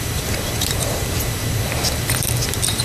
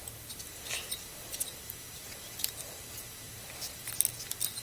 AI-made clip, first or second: first